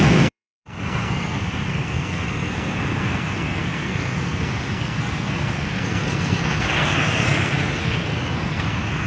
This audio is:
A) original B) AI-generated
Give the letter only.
B